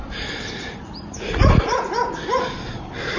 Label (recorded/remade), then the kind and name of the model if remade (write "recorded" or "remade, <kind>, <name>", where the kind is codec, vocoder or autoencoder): recorded